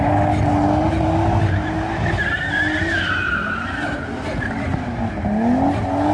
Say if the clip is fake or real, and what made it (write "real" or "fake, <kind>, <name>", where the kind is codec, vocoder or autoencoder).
real